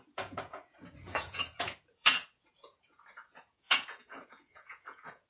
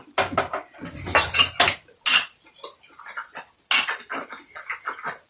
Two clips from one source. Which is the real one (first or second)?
second